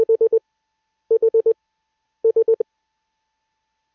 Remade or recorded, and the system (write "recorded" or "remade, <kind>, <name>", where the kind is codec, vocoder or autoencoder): recorded